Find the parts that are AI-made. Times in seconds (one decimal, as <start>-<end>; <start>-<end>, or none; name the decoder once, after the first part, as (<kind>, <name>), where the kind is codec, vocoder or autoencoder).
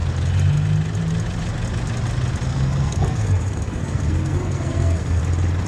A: 2.5-5.2 (codec, SNAC)